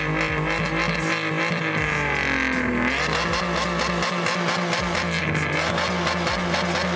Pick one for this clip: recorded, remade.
recorded